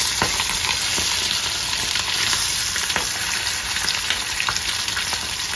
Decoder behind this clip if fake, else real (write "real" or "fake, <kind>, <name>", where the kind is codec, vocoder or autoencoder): real